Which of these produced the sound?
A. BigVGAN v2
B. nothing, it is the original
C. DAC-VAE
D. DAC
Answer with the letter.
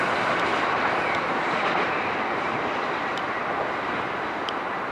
B